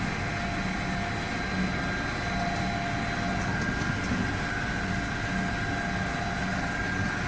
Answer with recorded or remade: recorded